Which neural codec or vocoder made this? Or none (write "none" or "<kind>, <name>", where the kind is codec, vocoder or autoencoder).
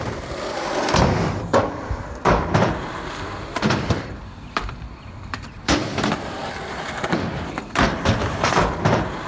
vocoder, BigVGAN v2